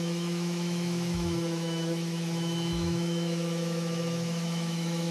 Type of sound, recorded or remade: remade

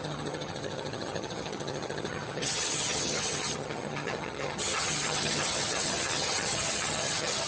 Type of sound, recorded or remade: remade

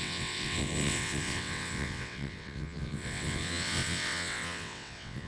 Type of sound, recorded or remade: remade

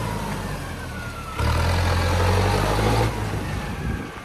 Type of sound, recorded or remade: recorded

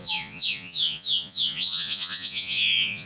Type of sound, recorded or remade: remade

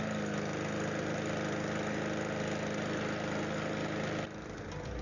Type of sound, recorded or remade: recorded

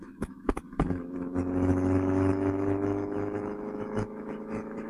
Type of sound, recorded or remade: remade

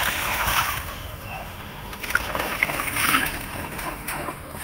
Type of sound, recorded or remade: remade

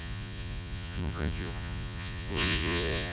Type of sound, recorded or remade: remade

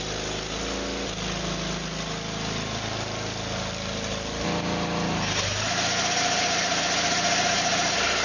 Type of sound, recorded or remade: recorded